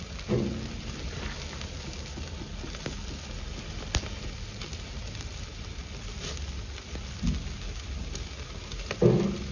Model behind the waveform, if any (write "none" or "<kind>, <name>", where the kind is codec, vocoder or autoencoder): none